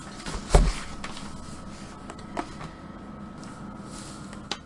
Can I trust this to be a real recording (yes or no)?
yes